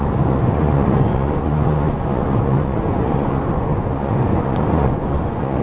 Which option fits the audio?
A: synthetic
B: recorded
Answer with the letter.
A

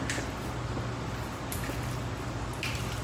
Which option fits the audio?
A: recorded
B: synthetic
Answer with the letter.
A